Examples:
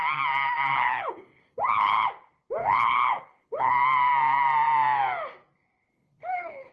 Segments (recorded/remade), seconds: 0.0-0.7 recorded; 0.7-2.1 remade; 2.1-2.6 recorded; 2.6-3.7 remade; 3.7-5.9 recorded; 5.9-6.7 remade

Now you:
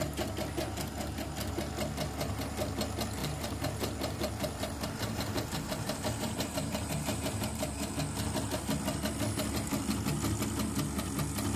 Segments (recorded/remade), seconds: 0.0-3.2 recorded; 3.2-7.9 remade; 7.9-11.6 recorded

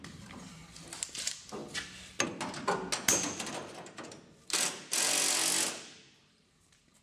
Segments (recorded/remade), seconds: 0.0-0.6 remade; 0.6-1.1 recorded; 1.1-1.6 remade; 1.6-5.8 recorded; 5.8-7.0 remade

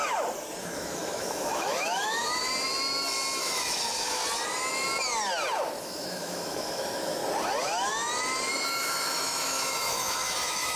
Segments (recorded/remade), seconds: 0.0-0.6 recorded; 0.6-2.4 remade; 2.4-3.4 recorded; 3.4-4.2 remade; 4.2-5.8 recorded; 5.8-7.2 remade; 7.2-8.5 recorded; 8.5-10.8 remade

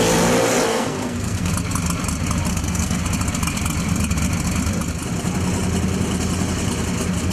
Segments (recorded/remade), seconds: 0.0-0.7 recorded; 0.7-1.5 remade; 1.5-2.5 recorded; 2.5-3.0 remade; 3.0-7.3 recorded